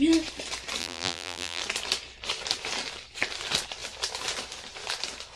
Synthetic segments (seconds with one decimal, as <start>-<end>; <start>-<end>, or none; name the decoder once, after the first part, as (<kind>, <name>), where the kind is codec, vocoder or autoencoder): 0.8-1.6 (vocoder, BigVGAN v2)